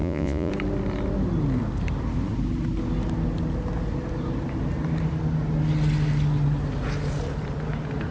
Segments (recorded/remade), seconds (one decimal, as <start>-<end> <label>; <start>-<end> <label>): 0.0-0.5 remade; 0.5-8.1 recorded